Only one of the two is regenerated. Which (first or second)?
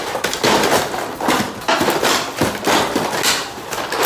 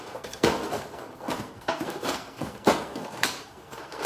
second